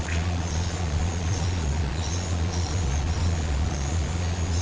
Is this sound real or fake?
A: fake